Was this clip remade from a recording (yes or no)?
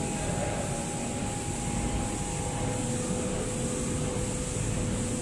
no